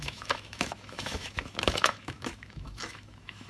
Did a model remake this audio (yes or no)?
yes